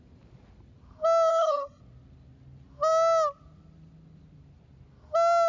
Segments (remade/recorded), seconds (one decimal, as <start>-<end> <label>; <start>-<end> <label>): 0.0-1.3 recorded; 1.3-1.8 remade; 1.8-5.5 recorded